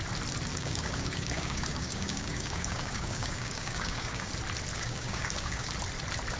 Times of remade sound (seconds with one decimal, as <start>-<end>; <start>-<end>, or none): 0.5-4.3; 4.7-5.7